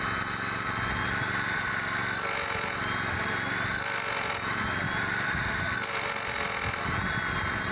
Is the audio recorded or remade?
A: recorded